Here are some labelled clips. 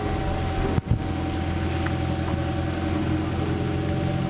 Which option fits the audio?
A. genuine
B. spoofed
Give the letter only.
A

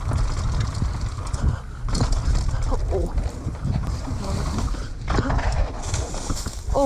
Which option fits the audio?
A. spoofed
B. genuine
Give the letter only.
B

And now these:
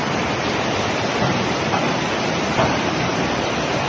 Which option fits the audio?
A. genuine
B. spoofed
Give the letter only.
B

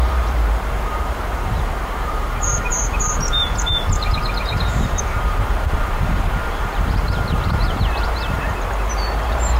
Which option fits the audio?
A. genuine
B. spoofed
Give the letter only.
B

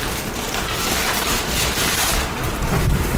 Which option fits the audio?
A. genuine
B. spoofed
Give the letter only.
A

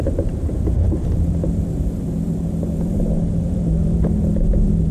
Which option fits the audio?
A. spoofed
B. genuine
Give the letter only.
A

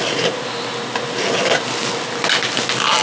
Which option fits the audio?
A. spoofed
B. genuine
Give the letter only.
B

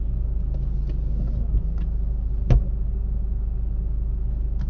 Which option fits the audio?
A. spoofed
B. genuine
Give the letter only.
B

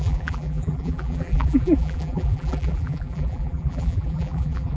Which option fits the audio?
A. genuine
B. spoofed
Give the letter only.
B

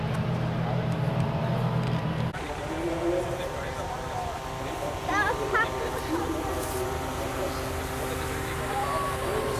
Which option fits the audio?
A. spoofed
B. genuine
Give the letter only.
B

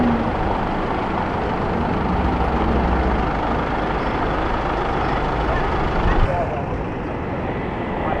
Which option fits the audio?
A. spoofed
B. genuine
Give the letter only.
B